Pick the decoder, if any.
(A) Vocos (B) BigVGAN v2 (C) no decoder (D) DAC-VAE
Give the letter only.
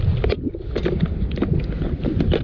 C